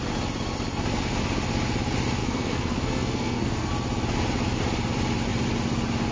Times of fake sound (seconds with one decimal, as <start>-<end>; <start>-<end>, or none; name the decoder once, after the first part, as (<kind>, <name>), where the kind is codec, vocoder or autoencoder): 2.2-3.7 (codec, SNAC)